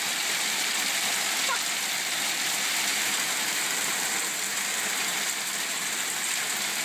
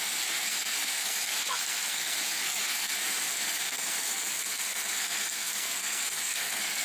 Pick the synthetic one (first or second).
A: second